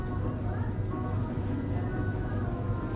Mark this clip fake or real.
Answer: real